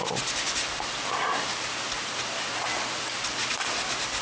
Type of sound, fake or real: real